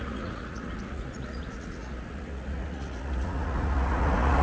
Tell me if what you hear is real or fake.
fake